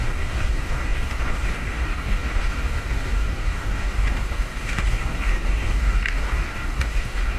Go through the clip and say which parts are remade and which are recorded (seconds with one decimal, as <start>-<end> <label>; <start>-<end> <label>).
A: 0.0-7.4 remade